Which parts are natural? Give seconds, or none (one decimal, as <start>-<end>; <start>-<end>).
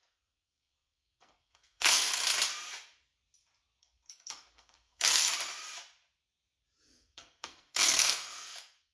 2.2-3.8; 5.2-6.8